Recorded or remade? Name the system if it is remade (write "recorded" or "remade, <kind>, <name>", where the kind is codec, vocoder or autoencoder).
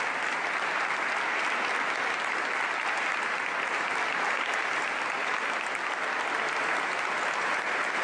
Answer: recorded